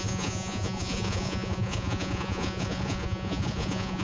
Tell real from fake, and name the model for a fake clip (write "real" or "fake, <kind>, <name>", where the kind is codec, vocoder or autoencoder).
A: fake, vocoder, Vocos